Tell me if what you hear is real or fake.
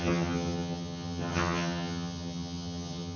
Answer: fake